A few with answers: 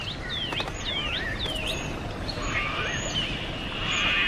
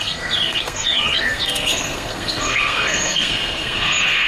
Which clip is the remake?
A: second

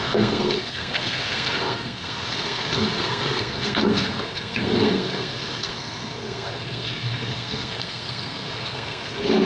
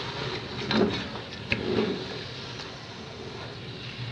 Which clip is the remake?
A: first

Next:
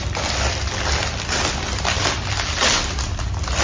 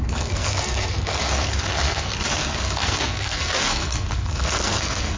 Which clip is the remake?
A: second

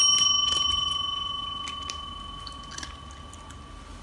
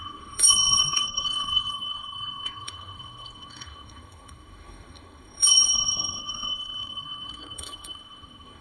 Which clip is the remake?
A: second